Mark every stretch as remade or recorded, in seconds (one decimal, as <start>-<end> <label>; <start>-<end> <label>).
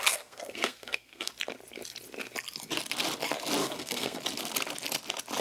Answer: 0.0-1.3 remade; 1.3-3.6 recorded; 3.6-4.2 remade; 4.2-5.4 recorded